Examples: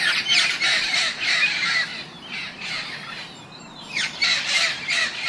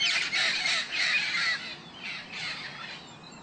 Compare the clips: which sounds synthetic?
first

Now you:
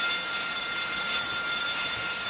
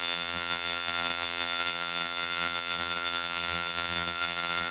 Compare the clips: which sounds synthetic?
second